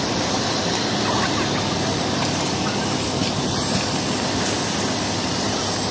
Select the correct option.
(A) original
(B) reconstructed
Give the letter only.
A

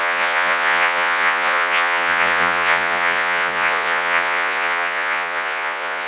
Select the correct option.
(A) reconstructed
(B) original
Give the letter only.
A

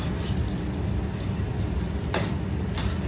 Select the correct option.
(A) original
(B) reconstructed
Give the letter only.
A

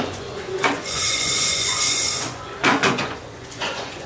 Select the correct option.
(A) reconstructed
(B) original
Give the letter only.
A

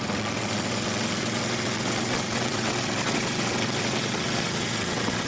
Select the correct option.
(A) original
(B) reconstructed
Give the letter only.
B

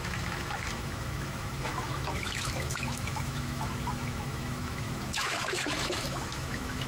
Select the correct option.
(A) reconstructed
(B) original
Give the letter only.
A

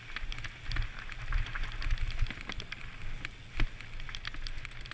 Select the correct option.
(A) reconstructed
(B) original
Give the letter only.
B